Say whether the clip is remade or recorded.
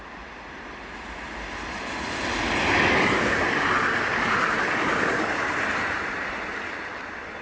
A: recorded